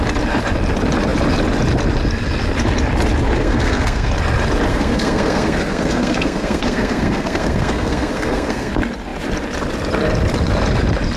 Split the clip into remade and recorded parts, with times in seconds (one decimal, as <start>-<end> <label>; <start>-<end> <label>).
0.0-3.4 recorded; 3.4-4.1 remade; 4.1-4.7 recorded; 4.7-8.7 remade; 8.7-11.2 recorded